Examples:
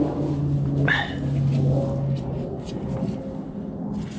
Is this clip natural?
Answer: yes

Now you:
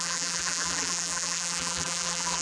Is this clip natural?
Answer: no